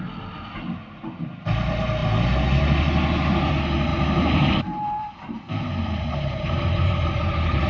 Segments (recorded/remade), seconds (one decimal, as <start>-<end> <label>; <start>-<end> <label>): 0.0-3.9 recorded; 3.9-7.7 remade